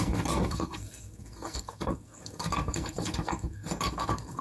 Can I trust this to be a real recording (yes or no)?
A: no